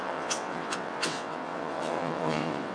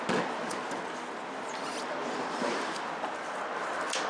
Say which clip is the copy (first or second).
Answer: first